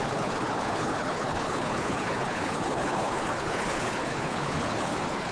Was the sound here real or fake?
fake